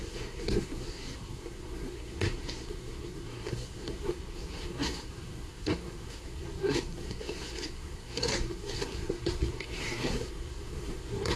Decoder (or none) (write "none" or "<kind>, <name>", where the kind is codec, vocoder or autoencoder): codec, SNAC